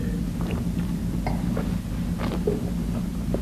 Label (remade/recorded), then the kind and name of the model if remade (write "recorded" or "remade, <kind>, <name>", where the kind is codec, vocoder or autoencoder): recorded